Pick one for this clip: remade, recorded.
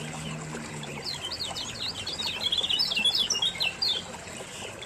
recorded